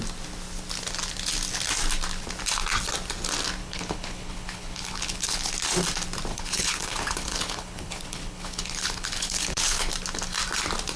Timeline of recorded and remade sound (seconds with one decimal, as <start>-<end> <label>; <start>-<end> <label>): 0.0-3.6 recorded; 3.6-5.5 remade; 5.5-6.3 recorded; 6.3-9.9 remade; 9.9-11.0 recorded